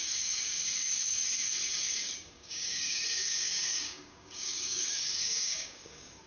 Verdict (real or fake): fake